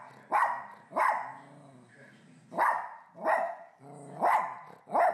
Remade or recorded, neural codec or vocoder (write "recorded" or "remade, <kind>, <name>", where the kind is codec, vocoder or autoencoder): recorded